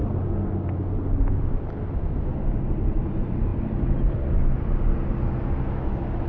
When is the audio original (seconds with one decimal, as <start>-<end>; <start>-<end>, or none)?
0.0-6.3